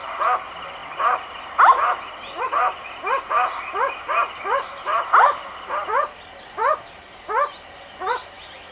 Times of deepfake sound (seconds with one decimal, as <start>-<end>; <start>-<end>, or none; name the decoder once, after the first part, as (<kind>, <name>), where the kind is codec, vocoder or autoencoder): none